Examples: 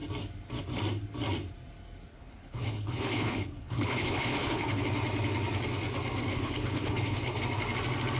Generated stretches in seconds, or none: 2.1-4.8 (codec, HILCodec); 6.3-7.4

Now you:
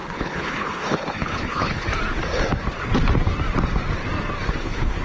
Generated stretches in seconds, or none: 0.0-1.9 (codec, HILCodec); 4.5-5.0

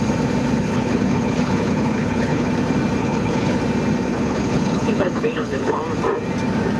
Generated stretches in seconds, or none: 0.6-2.5 (codec, HILCodec); 3.0-3.6; 4.1-5.8

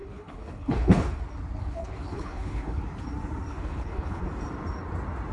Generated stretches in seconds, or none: 0.0-1.2 (codec, HILCodec); 1.6-2.8; 3.5-4.2

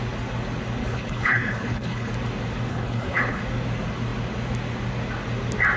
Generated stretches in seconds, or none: 0.8-2.1 (codec, HILCodec); 2.7-3.4